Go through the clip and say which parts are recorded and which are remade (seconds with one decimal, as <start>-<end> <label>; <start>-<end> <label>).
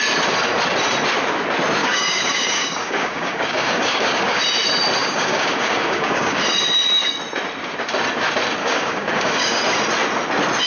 0.0-1.8 recorded; 1.8-4.4 remade; 4.4-5.0 recorded; 5.0-6.4 remade; 6.4-8.6 recorded; 8.6-9.6 remade; 9.6-10.7 recorded